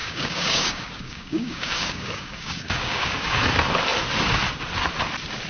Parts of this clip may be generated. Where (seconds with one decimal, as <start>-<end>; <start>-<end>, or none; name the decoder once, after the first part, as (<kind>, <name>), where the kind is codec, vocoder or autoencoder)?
0.0-3.3 (codec, DAC)